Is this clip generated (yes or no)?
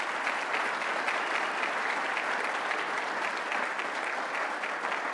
no